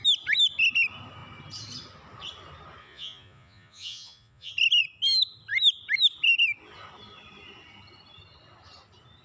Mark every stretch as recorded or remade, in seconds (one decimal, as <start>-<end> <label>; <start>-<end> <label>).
0.0-2.8 recorded; 2.8-4.5 remade; 4.5-9.2 recorded